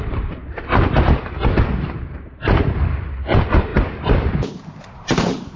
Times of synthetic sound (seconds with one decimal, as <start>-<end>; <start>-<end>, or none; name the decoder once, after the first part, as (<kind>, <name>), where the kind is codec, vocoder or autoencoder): 0.0-0.4 (vocoder, BigVGAN v2); 2.0-5.6